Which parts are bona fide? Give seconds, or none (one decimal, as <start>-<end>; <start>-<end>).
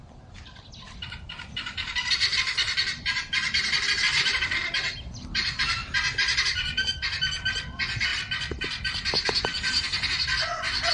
5.8-6.4; 8.1-10.9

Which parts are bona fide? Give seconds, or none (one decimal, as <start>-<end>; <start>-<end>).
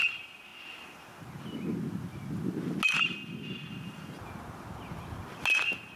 0.0-6.0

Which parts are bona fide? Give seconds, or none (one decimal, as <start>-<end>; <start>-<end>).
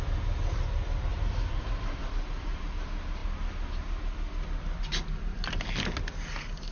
0.0-1.1; 2.7-6.7